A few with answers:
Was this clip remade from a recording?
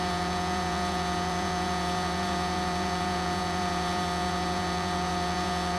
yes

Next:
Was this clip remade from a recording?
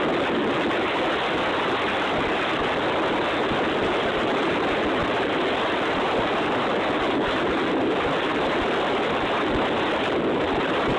no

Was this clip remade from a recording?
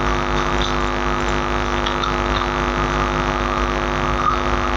no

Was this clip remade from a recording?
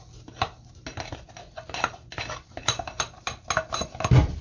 no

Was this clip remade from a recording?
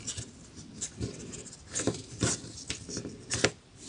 no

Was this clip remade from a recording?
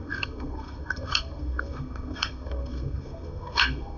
yes